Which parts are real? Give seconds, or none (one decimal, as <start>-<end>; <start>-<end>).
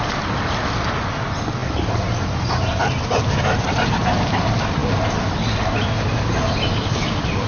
0.0-4.8; 6.4-7.5